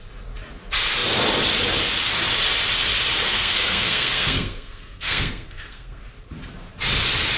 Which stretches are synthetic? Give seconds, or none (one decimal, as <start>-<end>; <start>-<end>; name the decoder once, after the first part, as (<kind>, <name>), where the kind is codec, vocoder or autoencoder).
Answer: 3.3-6.0 (codec, SNAC)